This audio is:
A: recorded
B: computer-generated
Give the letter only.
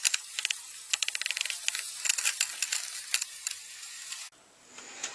A